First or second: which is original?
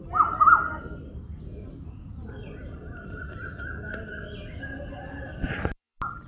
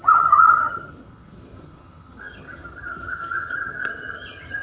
first